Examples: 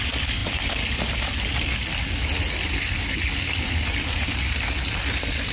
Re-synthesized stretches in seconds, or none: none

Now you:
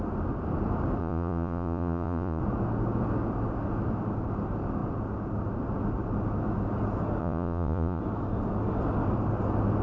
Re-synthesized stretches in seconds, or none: 1.0-2.4 (vocoder, Vocos); 7.2-8.0

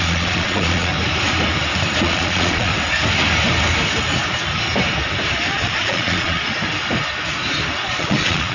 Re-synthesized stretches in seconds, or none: 0.0-0.9 (vocoder, Vocos); 2.0-2.7; 5.5-6.6; 7.8-8.5

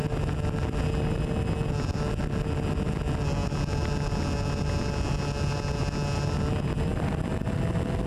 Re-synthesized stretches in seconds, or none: none

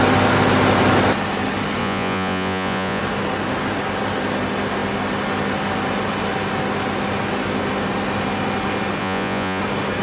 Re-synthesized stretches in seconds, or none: 1.8-3.0 (vocoder, Vocos); 9.0-9.6